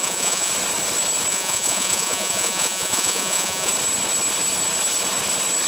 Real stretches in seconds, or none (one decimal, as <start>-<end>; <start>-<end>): 0.5-1.3; 3.7-5.7